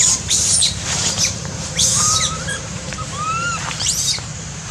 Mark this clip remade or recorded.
remade